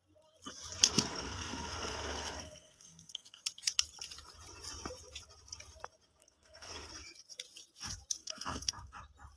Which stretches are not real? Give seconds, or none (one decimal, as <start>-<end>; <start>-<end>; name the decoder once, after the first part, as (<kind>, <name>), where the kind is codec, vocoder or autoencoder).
1.1-3.4 (codec, SNAC); 6.2-6.9; 8.2-8.9